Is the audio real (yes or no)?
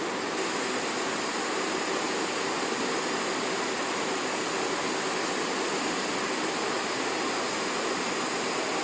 yes